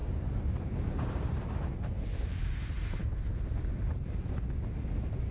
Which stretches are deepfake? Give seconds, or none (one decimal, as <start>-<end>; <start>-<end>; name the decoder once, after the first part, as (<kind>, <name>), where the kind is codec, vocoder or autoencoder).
0.0-2.6 (vocoder, BigVGAN v2); 3.0-4.3